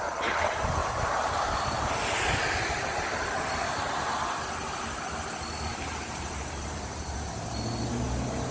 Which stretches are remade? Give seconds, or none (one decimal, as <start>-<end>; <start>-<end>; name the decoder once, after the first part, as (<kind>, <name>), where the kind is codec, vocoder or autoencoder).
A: 0.8-3.4 (vocoder, BigVGAN v2); 5.7-7.5